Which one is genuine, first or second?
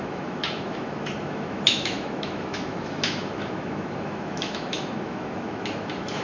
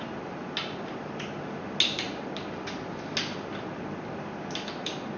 second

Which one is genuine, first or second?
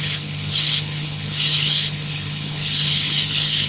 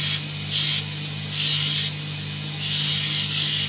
second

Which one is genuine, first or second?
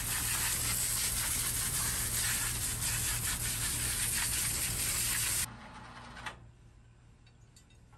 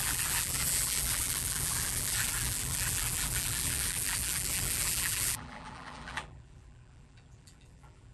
first